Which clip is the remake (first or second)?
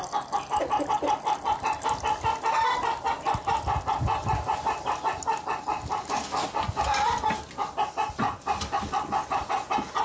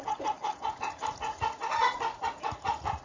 second